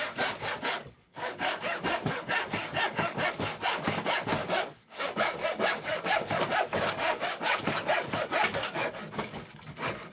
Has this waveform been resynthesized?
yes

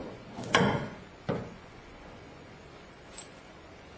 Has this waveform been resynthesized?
yes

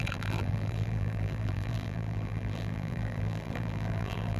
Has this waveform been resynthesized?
yes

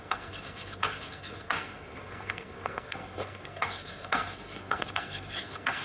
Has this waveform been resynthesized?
yes